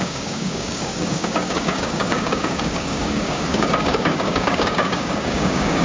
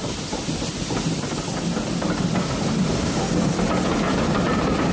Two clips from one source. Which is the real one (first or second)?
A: second